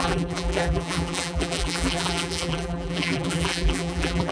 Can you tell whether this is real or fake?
fake